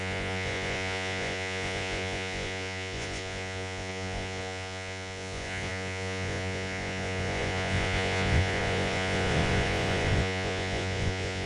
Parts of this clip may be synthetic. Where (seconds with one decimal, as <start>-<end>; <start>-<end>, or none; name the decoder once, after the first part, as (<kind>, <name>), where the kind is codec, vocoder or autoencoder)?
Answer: 0.0-11.5 (vocoder, Vocos)